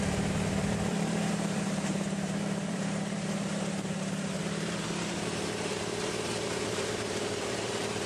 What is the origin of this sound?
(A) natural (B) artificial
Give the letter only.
B